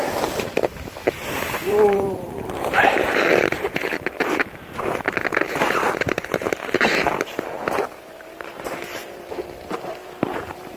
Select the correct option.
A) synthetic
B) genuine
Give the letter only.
A